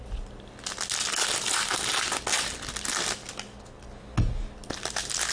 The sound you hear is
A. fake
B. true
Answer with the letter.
B